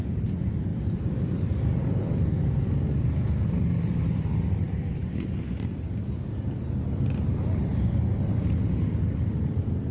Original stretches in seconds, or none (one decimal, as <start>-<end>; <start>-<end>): 0.0-0.7; 1.8-5.0; 6.1-7.7; 8.3-9.9